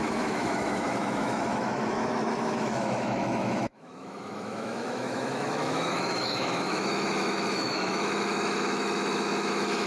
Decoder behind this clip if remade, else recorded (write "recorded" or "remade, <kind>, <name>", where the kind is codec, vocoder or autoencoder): remade, autoencoder, DAC-VAE